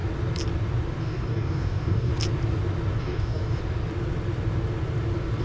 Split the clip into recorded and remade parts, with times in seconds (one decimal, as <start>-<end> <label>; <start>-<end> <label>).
0.0-1.0 recorded; 1.0-2.1 remade; 2.1-3.0 recorded; 3.0-3.6 remade; 3.6-5.4 recorded